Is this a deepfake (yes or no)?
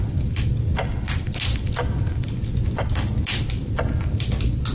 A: no